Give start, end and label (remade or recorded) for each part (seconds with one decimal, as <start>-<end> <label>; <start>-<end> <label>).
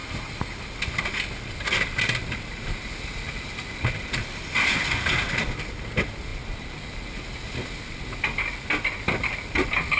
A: 0.0-10.0 recorded